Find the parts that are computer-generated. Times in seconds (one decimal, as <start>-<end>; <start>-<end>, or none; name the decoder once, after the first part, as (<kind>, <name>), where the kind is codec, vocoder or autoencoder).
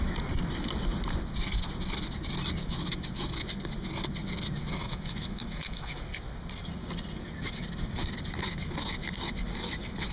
4.8-6.0 (autoencoder, DAC-VAE)